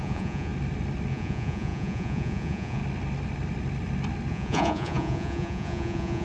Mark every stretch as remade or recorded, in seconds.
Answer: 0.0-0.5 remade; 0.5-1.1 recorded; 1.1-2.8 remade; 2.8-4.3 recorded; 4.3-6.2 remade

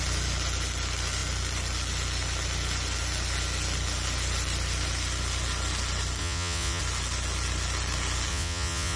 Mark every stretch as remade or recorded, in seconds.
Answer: 0.0-6.2 recorded; 6.2-6.8 remade; 6.8-8.3 recorded; 8.3-9.0 remade

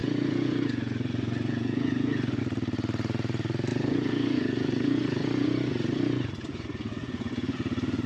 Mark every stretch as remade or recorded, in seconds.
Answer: 0.0-2.4 remade; 2.4-3.7 recorded; 3.7-8.1 remade

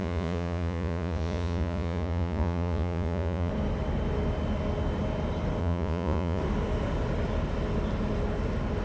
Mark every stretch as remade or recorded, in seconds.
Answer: 0.0-3.5 remade; 3.5-5.6 recorded; 5.6-6.4 remade; 6.4-8.8 recorded